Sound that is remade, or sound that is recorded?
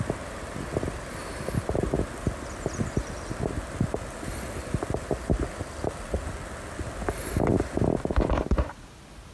recorded